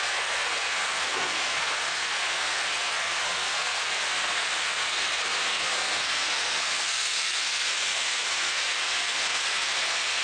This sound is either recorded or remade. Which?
remade